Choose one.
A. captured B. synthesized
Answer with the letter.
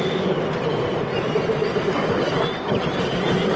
A